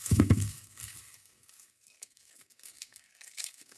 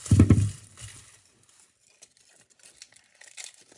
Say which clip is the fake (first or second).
first